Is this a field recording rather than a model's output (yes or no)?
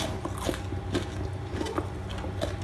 yes